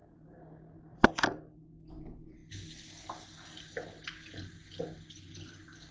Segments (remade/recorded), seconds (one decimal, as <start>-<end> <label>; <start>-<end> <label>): 0.0-5.9 recorded